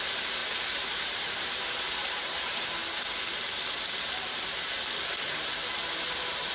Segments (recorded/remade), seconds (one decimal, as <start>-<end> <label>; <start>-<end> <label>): 0.0-0.4 remade; 0.4-1.0 recorded; 1.0-2.8 remade; 2.8-5.9 recorded; 5.9-6.5 remade